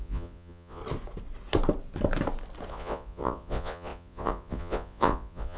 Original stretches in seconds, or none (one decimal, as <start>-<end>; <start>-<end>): 0.8-2.7